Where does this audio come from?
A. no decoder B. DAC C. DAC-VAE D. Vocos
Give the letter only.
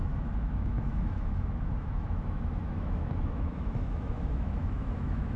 C